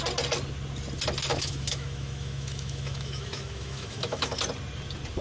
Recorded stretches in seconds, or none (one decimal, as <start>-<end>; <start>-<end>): 0.0-1.3; 4.4-5.2